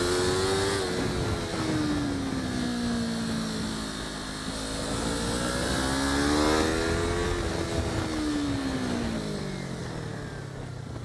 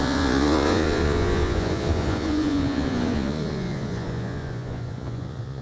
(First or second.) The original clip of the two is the first